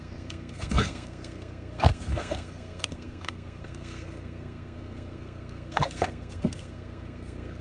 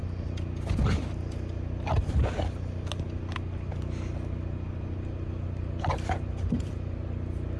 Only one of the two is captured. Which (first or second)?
second